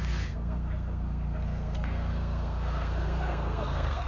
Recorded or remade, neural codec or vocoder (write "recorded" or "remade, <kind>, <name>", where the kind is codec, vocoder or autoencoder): remade, codec, SNAC